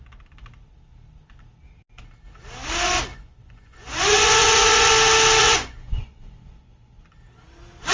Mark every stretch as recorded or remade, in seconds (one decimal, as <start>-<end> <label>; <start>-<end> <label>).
0.0-3.1 recorded; 3.1-4.9 remade; 4.9-5.4 recorded; 5.4-6.7 remade; 6.7-7.9 recorded